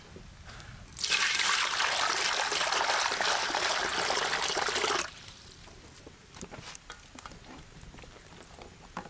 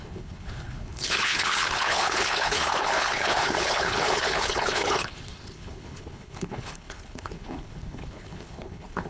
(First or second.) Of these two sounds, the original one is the first